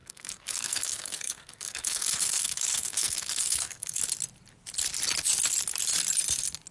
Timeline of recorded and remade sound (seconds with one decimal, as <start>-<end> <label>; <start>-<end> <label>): 0.0-4.0 remade; 4.0-6.7 recorded